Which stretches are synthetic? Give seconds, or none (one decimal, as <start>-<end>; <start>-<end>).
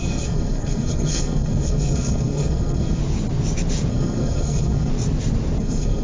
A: 0.0-3.0; 3.9-4.9; 5.6-6.0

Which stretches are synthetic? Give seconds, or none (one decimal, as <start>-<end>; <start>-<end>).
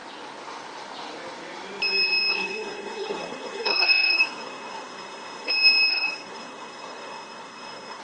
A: 2.3-5.5; 5.9-8.0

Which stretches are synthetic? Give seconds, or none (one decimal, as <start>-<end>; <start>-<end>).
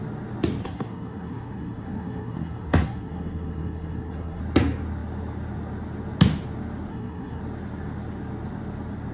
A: 0.6-4.4; 6.9-7.4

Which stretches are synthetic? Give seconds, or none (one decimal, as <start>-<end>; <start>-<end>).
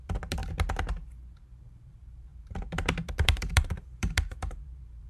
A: 0.0-0.4; 1.6-5.1